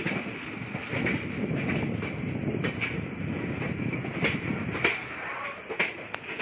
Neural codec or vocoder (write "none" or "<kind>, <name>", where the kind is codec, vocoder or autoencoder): none